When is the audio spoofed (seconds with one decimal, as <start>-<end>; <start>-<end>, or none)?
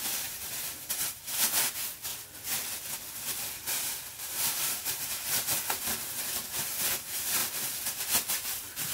0.0-2.1; 4.2-8.9